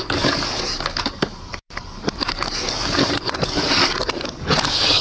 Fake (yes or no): yes